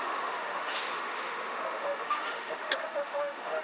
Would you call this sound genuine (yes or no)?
no